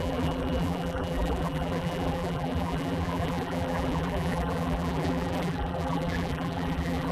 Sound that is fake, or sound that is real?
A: fake